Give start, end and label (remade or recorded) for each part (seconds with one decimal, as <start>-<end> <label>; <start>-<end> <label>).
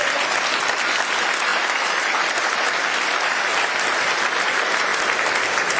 0.0-1.5 recorded; 1.5-3.7 remade; 3.7-4.9 recorded; 4.9-5.8 remade